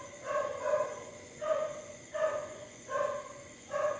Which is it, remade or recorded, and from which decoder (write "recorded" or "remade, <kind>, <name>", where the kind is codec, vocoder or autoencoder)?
remade, vocoder, Vocos